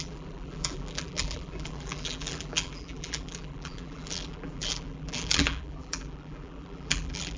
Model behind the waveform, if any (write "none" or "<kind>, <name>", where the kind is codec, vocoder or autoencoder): vocoder, BigVGAN v2